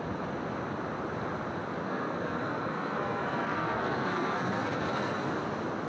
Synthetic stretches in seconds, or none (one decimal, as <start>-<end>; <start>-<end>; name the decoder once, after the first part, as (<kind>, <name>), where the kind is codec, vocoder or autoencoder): 1.8-5.3 (codec, SNAC)